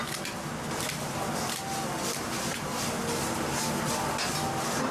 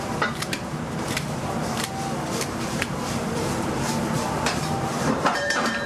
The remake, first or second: second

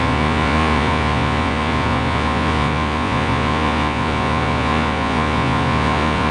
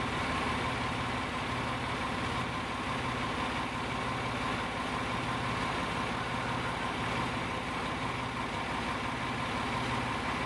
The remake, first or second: first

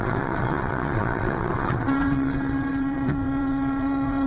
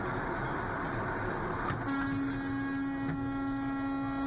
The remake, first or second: first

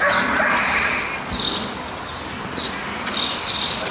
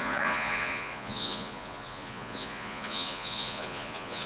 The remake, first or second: second